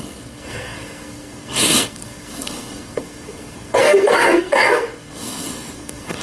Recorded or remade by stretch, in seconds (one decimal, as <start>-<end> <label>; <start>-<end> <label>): 0.0-6.2 remade